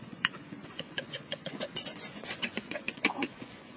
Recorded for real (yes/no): no